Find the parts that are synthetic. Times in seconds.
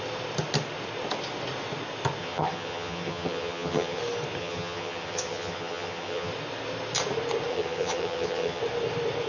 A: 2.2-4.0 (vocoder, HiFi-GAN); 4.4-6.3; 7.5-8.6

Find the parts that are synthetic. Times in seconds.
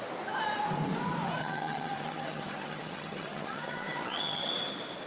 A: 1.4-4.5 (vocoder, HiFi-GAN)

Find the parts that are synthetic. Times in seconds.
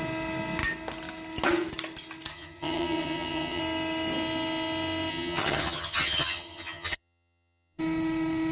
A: 2.3-3.6 (vocoder, HiFi-GAN); 5.1-7.8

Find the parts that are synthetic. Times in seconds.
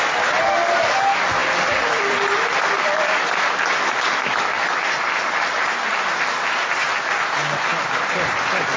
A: none